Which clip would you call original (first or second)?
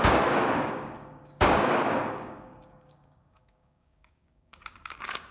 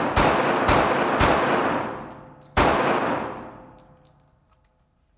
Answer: second